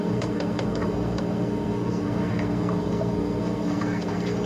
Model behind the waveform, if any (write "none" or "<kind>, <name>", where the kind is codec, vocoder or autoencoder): codec, SNAC